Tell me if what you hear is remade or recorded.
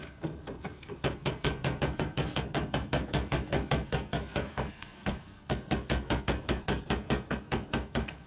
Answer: remade